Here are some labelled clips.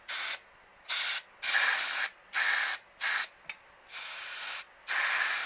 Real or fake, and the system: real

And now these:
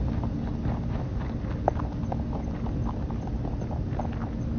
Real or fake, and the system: real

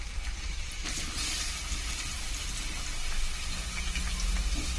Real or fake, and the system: real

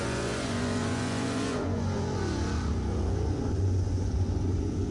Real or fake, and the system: fake, vocoder, Vocos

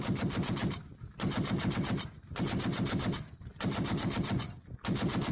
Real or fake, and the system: real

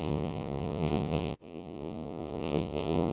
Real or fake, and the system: fake, vocoder, Vocos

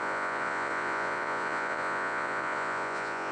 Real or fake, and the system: fake, vocoder, Vocos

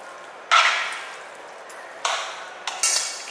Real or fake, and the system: real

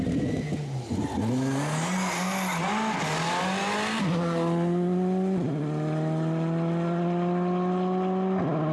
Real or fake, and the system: real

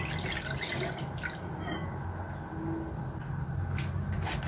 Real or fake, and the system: real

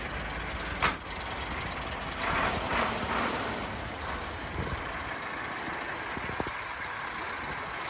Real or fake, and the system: real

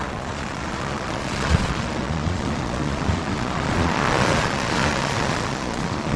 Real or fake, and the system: fake, vocoder, Vocos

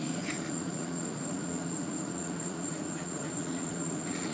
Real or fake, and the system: fake, vocoder, Vocos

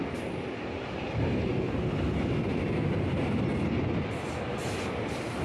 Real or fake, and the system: real